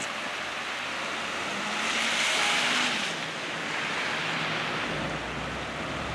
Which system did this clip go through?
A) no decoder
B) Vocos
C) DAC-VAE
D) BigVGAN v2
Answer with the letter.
A